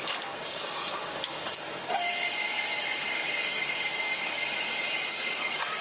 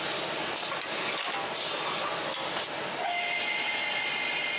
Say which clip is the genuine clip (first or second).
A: second